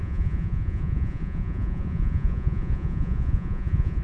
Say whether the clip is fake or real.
fake